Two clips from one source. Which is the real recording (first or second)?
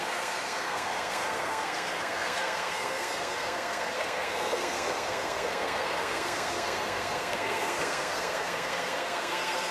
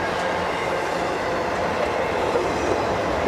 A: second